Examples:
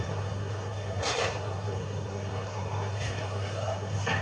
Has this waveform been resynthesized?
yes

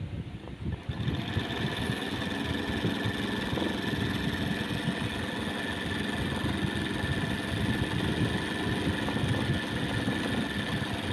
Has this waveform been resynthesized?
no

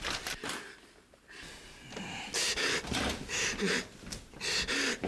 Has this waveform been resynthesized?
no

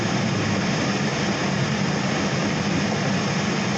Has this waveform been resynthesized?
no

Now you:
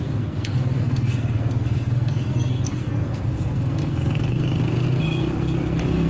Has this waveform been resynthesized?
yes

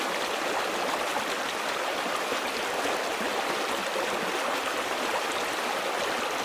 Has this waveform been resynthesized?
no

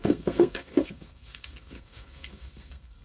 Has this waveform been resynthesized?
yes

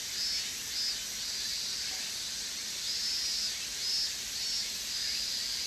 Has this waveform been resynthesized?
no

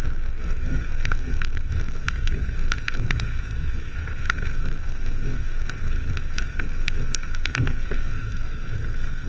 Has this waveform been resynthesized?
yes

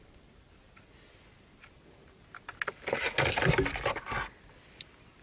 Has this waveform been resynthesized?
no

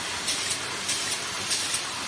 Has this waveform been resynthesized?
no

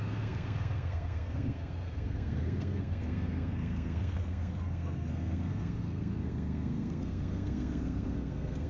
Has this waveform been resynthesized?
yes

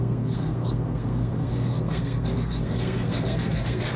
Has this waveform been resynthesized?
yes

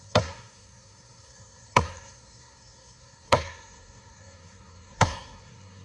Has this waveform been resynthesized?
yes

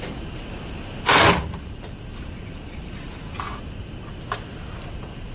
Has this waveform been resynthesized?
no